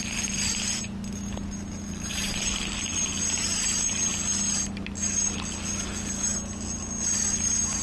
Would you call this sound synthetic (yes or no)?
no